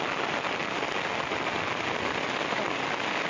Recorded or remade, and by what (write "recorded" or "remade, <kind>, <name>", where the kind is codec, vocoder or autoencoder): recorded